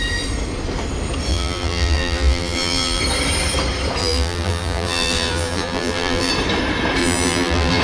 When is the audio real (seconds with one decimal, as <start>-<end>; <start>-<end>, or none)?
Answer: 0.0-1.3; 3.0-4.0; 6.3-7.0

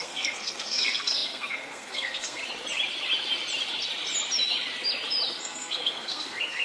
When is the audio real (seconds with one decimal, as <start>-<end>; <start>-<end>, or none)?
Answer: 2.4-5.4

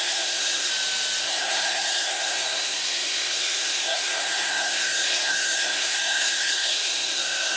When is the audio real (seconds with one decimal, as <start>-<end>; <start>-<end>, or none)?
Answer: 0.7-1.2

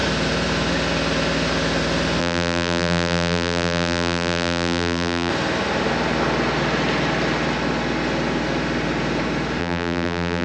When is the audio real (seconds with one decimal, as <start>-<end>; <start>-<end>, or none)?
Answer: 0.0-2.2; 5.3-9.6

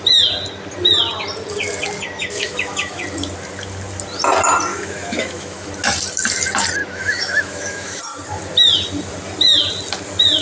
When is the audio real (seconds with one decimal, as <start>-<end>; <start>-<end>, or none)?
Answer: 0.0-2.2; 3.0-4.7; 5.7-6.8; 8.0-10.4

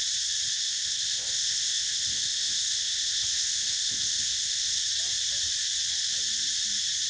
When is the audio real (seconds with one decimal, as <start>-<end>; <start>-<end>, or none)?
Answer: 0.0-0.5; 4.8-7.1

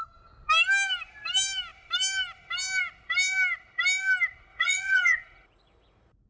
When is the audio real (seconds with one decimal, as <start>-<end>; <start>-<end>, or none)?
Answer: 0.0-4.5

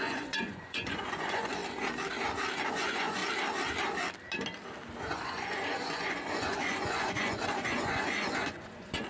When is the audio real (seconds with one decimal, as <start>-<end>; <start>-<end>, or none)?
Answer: 1.6-2.7; 3.2-5.0